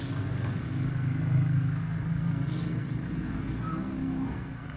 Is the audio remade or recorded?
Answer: remade